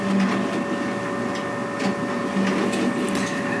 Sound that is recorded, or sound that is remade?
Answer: recorded